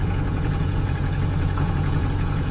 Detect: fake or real fake